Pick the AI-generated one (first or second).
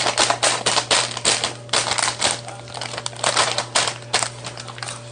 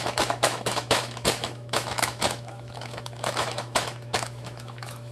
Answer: second